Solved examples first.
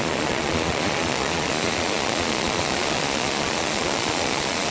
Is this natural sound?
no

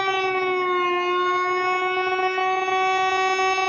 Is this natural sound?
yes